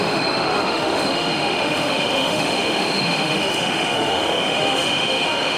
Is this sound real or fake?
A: fake